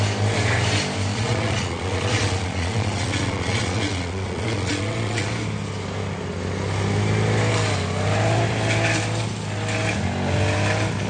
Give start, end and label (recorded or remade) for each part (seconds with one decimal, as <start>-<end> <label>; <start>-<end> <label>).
0.0-1.1 recorded; 1.1-5.3 remade; 5.3-11.1 recorded